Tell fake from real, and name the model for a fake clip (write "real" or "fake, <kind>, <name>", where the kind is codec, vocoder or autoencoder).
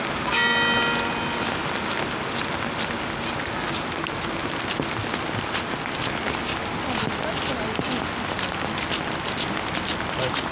real